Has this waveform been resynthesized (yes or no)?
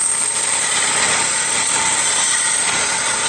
yes